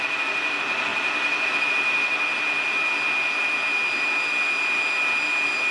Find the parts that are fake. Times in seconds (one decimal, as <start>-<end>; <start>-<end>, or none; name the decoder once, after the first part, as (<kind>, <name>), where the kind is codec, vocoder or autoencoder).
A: none

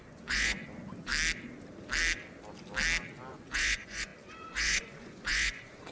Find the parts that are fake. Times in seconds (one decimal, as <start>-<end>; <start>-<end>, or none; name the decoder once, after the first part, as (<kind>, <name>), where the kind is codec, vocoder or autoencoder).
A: 0.0-1.1 (vocoder, Vocos); 3.3-5.9

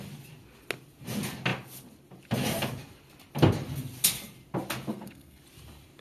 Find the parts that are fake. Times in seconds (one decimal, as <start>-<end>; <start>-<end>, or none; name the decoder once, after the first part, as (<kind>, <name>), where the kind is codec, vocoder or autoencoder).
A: 4.9-5.4 (codec, SNAC)

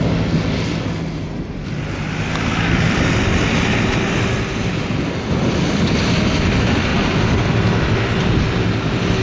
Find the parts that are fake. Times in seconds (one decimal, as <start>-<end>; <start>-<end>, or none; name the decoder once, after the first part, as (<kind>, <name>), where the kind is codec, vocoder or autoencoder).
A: none